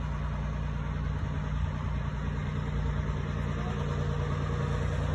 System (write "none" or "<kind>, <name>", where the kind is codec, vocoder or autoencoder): none